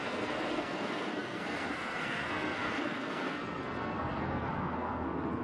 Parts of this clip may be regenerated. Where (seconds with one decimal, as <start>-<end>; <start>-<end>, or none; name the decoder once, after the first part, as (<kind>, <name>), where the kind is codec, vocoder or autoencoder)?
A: 0.0-5.4 (codec, SNAC)